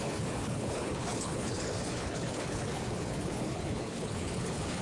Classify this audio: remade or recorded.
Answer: remade